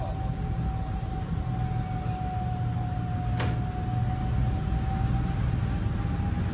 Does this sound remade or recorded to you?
recorded